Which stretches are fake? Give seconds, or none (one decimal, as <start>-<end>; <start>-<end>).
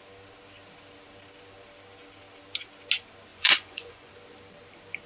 3.3-4.1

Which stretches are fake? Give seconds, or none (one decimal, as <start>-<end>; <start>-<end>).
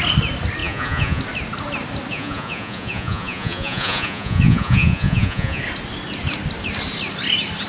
0.6-1.2; 2.1-5.6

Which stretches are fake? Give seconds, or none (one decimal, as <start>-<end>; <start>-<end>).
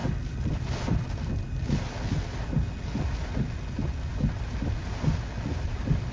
0.0-1.3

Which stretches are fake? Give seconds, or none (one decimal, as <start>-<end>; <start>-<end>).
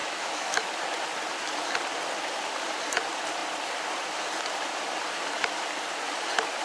0.0-0.7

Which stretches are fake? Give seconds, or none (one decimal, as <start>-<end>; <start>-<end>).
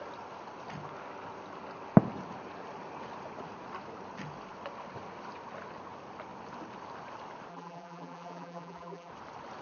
7.5-9.1